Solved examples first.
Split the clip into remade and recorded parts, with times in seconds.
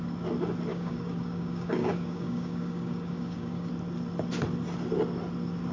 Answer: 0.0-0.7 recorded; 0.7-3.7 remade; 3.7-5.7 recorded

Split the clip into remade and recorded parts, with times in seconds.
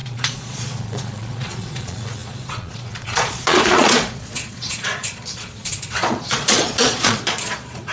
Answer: 0.0-7.9 remade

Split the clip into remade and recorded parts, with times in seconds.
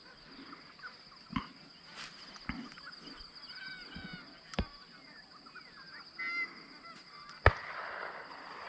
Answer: 0.0-8.7 recorded